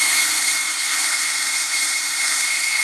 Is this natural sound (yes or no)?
no